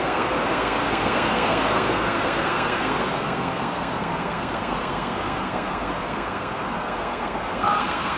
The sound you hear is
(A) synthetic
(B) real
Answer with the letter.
A